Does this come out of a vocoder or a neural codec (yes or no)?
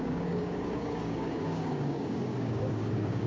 yes